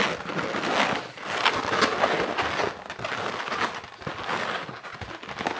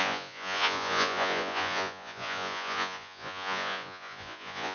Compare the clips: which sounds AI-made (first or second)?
second